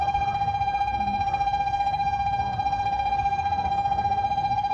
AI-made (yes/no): yes